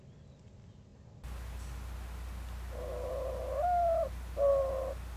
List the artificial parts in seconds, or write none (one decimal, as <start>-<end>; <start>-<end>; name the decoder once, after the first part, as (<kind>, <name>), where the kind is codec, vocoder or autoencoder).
none